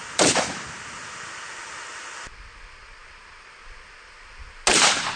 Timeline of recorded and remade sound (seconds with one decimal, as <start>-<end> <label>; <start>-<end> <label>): 0.0-5.2 recorded